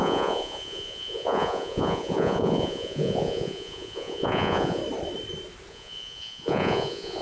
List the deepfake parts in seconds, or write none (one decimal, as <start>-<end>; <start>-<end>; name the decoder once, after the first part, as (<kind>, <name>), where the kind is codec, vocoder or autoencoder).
0.0-4.8 (vocoder, Vocos); 5.7-7.2